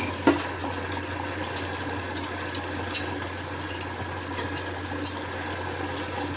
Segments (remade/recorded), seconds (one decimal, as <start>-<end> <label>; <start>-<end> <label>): 0.0-6.4 recorded